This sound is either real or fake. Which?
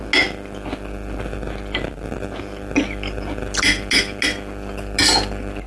real